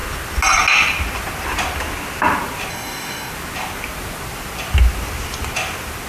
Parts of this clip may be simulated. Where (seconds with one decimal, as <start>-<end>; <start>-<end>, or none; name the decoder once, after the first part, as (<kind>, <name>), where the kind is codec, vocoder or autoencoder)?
2.7-3.3 (codec, DAC)